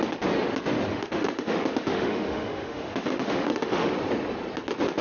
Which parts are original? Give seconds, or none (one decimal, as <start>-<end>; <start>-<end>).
0.0-0.9; 3.9-5.0